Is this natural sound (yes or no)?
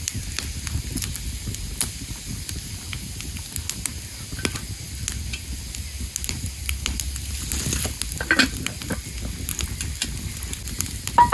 yes